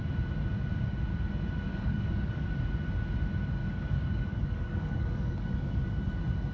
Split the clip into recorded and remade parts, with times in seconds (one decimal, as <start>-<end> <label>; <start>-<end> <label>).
0.0-1.7 recorded; 1.7-2.5 remade; 2.5-3.6 recorded; 3.6-5.9 remade; 5.9-6.5 recorded